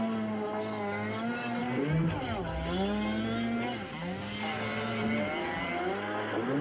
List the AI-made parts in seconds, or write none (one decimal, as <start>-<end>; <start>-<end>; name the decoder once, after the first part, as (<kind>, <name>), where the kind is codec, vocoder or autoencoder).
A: 1.6-2.2 (vocoder, BigVGAN v2)

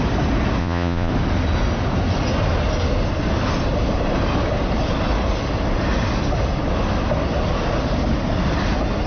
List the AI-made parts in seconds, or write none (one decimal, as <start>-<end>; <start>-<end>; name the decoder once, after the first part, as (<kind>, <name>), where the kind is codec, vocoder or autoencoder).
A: 0.6-1.1 (vocoder, Vocos)

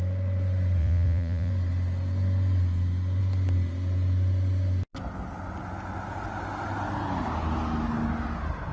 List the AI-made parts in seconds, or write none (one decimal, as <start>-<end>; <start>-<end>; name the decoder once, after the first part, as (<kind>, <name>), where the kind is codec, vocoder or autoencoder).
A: 0.8-1.5 (vocoder, Vocos)

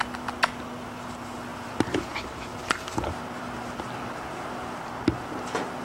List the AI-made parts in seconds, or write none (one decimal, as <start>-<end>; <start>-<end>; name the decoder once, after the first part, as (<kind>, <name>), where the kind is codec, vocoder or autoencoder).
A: 1.5-5.0 (vocoder, BigVGAN v2)